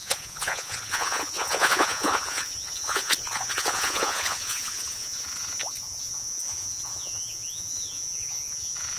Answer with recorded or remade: remade